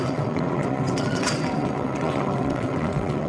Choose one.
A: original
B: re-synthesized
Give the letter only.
B